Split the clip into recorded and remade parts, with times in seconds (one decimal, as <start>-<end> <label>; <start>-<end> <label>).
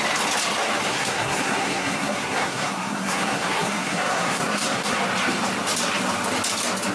0.0-0.9 recorded; 0.9-5.0 remade; 5.0-6.9 recorded